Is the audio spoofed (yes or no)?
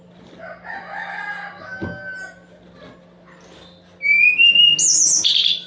no